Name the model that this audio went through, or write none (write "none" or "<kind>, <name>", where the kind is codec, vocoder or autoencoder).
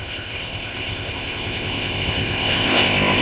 codec, ZipCodec